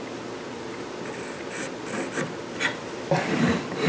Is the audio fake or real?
real